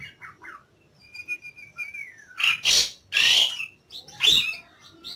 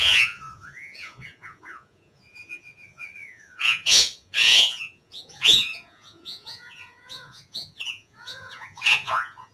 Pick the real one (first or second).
first